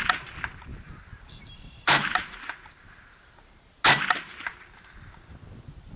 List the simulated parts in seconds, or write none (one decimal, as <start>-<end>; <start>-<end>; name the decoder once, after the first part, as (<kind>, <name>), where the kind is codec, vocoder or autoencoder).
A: 0.7-3.5 (vocoder, BigVGAN v2)